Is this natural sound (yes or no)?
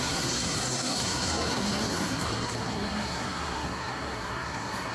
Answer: no